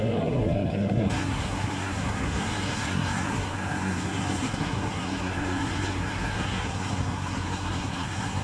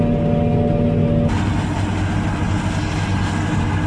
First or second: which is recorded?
second